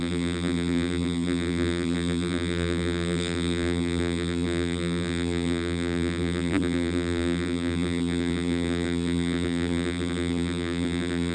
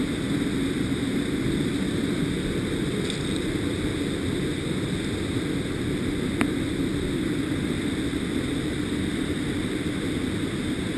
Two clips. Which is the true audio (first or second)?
second